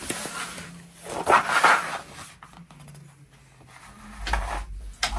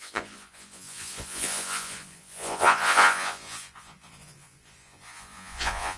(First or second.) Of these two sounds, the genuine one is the first